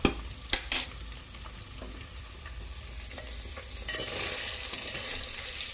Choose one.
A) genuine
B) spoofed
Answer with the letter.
A